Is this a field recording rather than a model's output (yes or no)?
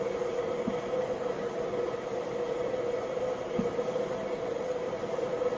yes